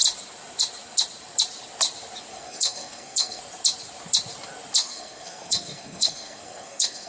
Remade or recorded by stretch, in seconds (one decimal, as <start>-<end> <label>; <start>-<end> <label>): 0.0-2.3 recorded; 2.3-3.4 remade; 3.4-4.8 recorded; 4.8-7.1 remade

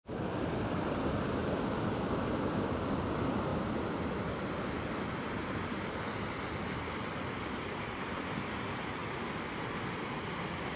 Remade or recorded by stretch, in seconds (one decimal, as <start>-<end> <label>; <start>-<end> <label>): 0.0-10.8 recorded

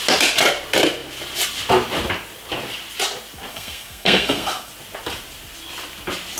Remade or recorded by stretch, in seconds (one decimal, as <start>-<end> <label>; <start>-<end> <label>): 0.0-3.5 recorded; 3.5-4.7 remade; 4.7-6.4 recorded